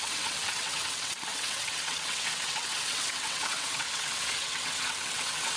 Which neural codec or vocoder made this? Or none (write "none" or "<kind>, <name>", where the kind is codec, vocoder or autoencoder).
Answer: vocoder, WaveNeXt